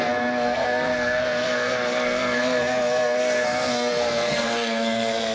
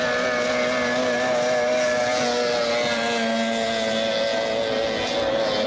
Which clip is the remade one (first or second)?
first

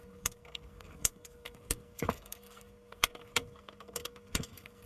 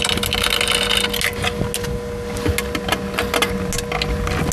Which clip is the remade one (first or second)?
first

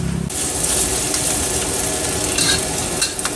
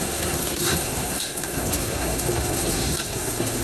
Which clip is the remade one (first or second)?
second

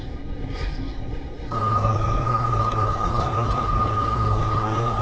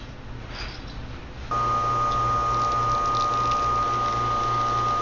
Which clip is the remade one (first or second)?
first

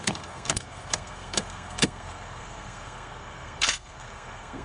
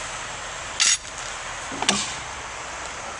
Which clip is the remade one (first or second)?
first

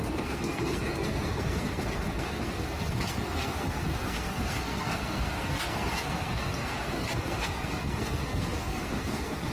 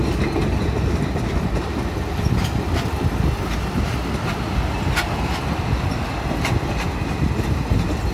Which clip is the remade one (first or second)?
first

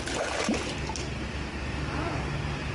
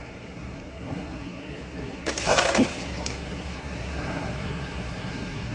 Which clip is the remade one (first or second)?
second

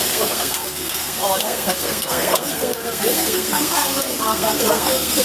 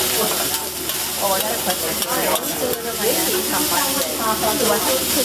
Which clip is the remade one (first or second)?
first